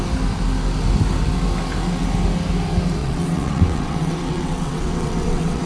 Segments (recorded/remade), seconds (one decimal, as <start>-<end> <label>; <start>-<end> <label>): 0.0-3.0 recorded; 3.0-5.7 remade